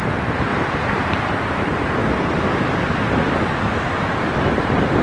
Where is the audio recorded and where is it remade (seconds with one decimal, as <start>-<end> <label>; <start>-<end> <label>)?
0.0-0.5 remade; 0.5-1.3 recorded; 1.3-2.0 remade; 2.0-5.0 recorded